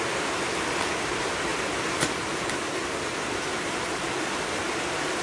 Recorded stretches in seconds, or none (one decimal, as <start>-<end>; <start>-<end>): 0.0-1.5; 4.6-5.2

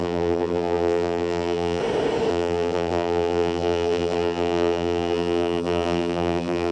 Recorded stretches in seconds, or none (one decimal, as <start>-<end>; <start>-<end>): 1.8-2.3

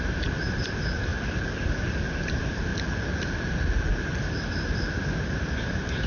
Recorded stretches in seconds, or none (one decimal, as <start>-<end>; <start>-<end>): 1.1-2.2; 2.7-3.9

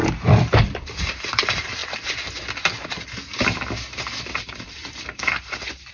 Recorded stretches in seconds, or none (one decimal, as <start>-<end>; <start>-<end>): 1.8-4.2